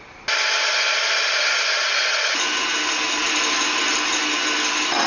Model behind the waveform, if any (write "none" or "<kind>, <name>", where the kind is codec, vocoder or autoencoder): none